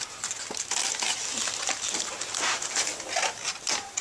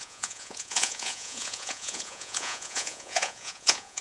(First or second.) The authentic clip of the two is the first